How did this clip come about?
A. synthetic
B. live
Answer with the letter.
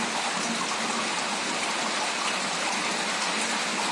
B